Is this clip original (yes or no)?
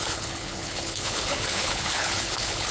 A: no